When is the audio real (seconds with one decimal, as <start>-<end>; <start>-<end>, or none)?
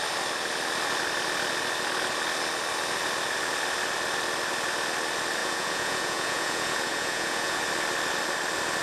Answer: 0.0-5.4; 7.6-8.8